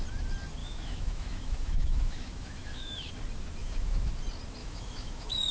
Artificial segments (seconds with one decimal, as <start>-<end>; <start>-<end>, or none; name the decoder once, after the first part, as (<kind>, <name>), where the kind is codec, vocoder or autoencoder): 0.6-3.1 (autoencoder, DAC-VAE); 3.6-4.1; 4.6-5.5